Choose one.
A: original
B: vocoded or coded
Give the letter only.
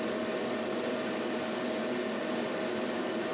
A